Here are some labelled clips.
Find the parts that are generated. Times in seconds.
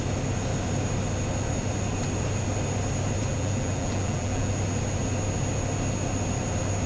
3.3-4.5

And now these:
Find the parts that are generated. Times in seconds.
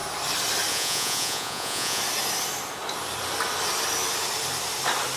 0.7-2.0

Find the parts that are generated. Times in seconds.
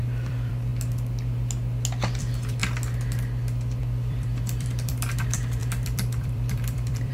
0.0-0.7; 2.2-2.6; 3.8-7.1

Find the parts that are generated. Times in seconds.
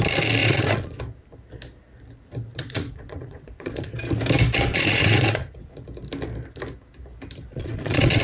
0.4-1.0; 2.5-3.9; 4.7-5.7; 7.5-8.2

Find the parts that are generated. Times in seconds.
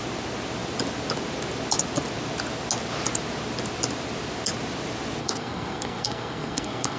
5.2-7.0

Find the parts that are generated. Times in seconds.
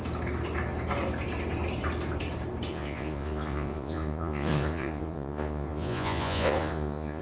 2.7-7.2